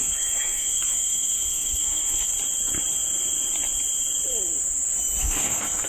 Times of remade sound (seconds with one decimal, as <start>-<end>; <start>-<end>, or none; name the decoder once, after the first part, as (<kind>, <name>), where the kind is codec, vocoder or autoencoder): 0.0-2.3 (codec, SNAC); 5.2-5.9